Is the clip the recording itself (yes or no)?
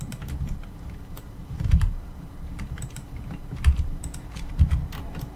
no